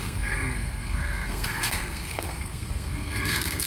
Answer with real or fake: fake